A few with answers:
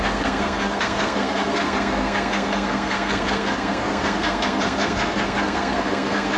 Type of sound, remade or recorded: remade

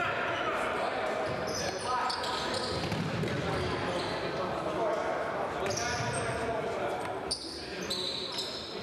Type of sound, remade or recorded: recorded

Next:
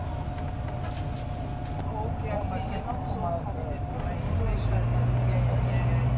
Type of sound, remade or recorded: recorded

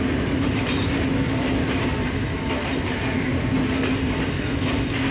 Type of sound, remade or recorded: recorded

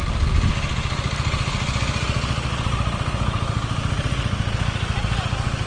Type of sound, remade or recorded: recorded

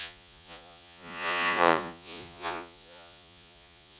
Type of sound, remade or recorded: remade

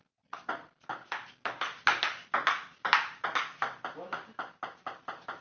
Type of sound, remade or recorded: recorded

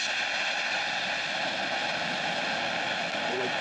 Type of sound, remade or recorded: recorded